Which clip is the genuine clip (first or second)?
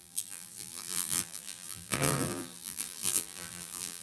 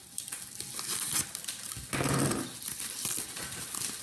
second